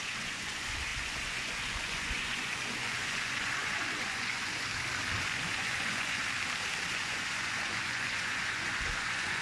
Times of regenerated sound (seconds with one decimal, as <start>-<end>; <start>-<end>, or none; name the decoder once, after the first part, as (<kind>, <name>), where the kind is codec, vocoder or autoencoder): 0.0-4.7 (vocoder, Vocos); 5.2-6.2; 6.9-9.4